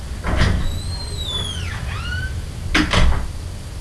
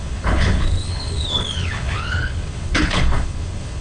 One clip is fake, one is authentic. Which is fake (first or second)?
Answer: second